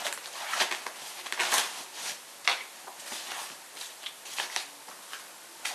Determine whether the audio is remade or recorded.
recorded